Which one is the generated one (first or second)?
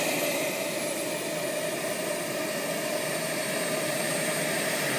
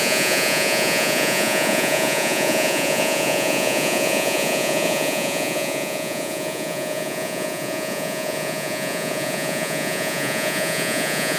second